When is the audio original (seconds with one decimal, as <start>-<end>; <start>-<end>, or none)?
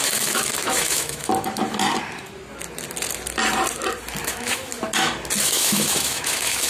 1.3-4.2; 4.7-5.4